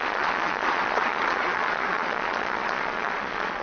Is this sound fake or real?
fake